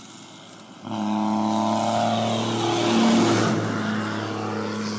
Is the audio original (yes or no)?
yes